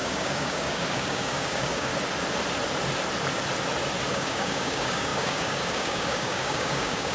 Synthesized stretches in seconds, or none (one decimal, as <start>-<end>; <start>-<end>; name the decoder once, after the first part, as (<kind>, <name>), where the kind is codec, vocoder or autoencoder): 0.0-1.9 (codec, DAC); 4.1-7.1